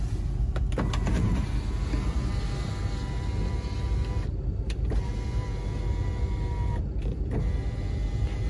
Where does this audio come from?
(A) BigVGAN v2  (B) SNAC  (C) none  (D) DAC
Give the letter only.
C